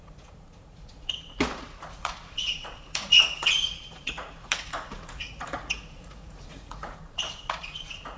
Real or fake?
fake